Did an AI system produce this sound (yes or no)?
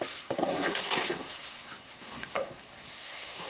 yes